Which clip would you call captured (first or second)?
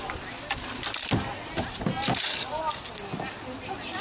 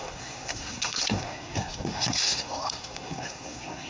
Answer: first